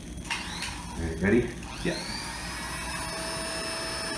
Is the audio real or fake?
real